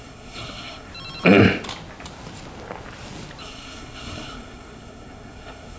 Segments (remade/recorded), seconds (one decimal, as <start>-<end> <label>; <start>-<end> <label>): 0.0-0.9 remade; 0.9-3.4 recorded; 3.4-5.8 remade